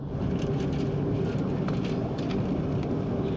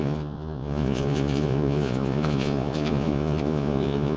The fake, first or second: second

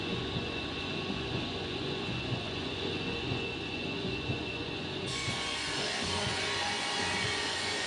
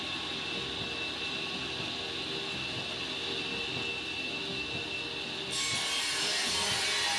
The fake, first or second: first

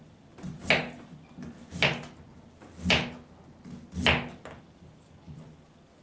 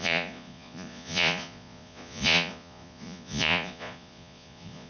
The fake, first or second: second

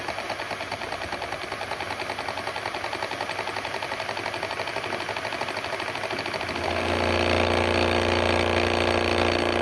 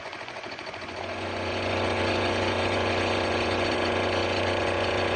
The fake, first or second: second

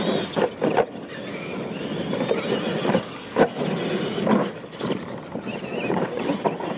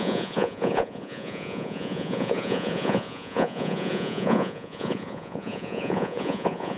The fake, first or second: second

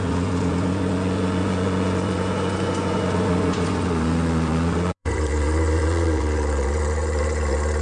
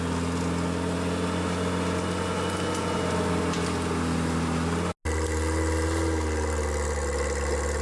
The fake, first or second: first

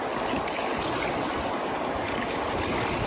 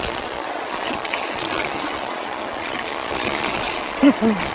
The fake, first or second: second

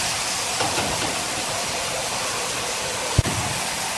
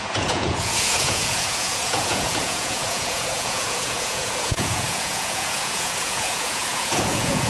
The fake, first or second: second